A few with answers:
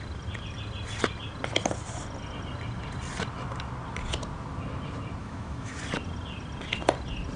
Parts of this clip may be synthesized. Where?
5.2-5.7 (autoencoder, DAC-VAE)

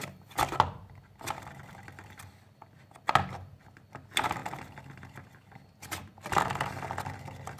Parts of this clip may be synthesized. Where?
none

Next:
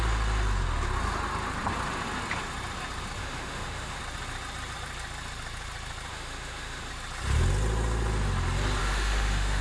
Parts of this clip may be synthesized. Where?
3.2-4.0 (autoencoder, DAC-VAE); 6.1-6.9; 8.8-9.6

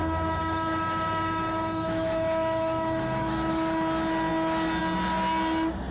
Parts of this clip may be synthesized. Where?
0.0-3.5 (autoencoder, DAC-VAE)

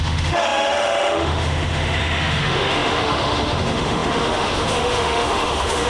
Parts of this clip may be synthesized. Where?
0.0-5.9 (autoencoder, DAC-VAE)

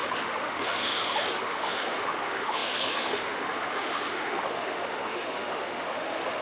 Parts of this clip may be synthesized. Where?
0.0-6.4 (autoencoder, DAC-VAE)

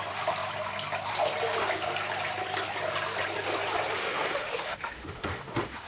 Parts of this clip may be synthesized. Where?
4.0-5.9 (autoencoder, DAC-VAE)

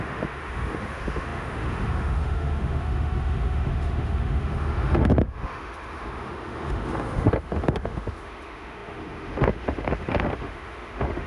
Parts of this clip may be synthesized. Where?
0.0-11.3 (autoencoder, DAC-VAE)